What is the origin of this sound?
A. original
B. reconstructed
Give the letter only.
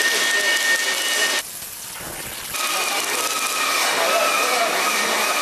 A